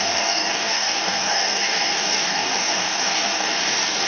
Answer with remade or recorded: remade